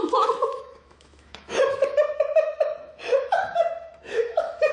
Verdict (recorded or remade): remade